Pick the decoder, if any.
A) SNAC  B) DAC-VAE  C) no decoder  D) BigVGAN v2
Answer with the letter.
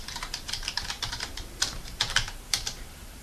D